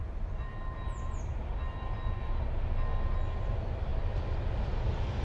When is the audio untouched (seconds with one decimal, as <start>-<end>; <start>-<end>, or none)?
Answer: 1.3-3.5